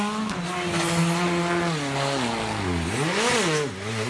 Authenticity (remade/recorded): recorded